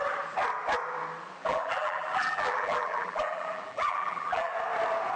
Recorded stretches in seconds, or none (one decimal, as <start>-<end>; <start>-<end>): 0.0-1.4; 4.5-5.2